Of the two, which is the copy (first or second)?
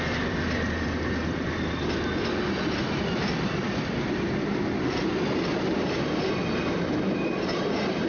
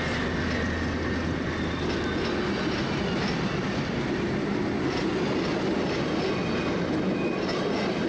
first